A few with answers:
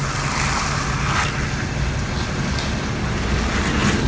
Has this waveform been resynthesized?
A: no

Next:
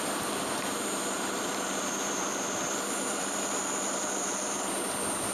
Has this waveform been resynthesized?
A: yes